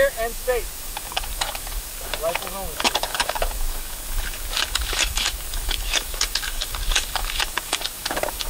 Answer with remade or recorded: remade